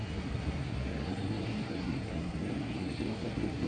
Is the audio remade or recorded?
remade